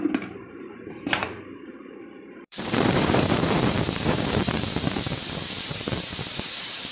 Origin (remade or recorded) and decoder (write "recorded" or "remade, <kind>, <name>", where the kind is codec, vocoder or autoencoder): remade, vocoder, BigVGAN v2